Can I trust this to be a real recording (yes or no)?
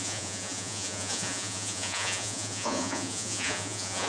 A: no